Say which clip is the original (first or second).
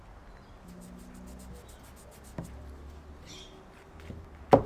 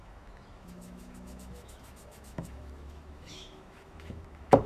first